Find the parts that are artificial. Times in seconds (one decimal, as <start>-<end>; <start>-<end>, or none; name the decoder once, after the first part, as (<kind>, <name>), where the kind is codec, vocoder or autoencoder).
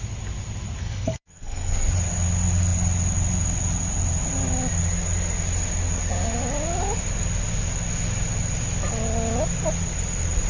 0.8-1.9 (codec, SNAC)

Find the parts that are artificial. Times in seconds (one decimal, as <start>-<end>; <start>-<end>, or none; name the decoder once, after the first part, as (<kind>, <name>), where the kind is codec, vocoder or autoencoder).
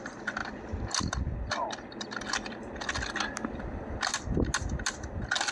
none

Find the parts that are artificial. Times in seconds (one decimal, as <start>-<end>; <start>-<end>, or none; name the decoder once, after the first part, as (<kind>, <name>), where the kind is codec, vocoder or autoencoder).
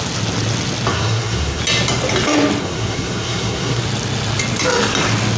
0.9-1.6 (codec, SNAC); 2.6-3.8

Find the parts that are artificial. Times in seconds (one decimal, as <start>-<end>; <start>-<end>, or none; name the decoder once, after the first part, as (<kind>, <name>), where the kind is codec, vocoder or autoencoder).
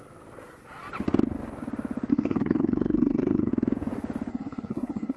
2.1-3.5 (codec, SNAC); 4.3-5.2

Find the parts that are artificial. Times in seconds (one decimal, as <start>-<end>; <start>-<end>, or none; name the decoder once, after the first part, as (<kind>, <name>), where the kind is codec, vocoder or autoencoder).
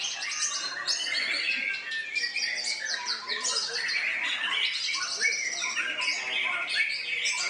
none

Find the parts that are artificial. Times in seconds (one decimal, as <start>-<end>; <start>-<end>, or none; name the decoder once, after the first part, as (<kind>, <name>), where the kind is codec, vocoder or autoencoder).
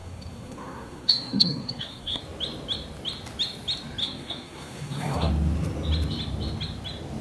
0.0-2.2 (codec, SNAC); 4.0-5.3